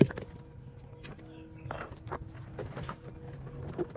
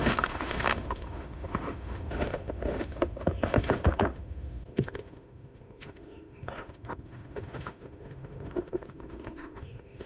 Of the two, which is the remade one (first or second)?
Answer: second